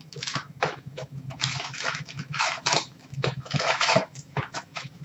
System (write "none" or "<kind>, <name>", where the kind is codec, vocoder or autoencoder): autoencoder, DAC-VAE